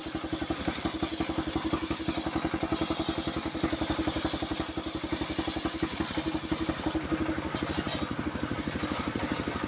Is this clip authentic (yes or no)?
yes